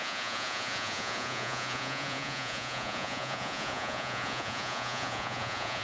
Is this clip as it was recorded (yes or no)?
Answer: no